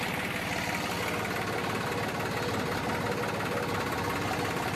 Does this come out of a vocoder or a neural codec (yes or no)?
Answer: no